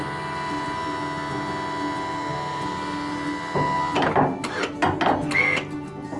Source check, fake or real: real